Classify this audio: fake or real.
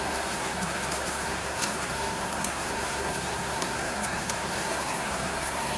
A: fake